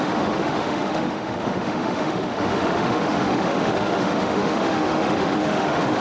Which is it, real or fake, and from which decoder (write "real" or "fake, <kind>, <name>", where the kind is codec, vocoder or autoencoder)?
fake, autoencoder, DAC-VAE